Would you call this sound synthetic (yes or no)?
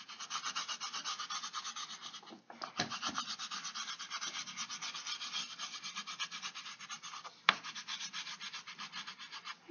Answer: no